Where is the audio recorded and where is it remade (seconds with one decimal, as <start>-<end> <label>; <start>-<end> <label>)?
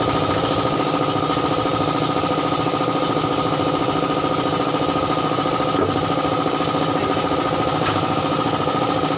0.0-9.2 recorded